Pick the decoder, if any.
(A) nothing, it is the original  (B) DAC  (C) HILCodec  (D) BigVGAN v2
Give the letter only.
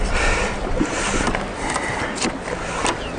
A